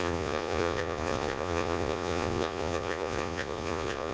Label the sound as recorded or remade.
remade